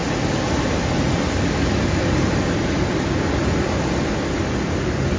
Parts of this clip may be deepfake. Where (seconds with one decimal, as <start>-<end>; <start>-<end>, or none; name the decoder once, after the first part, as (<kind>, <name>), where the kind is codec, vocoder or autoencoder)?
none